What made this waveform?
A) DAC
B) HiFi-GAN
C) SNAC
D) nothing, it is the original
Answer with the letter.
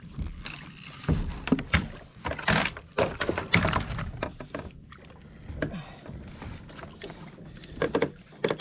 D